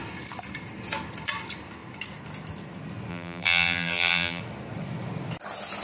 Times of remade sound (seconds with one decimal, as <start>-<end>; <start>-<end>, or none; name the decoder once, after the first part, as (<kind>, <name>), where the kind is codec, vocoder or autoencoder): 3.1-4.4 (vocoder, BigVGAN v2)